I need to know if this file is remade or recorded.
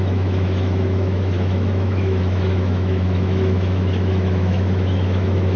remade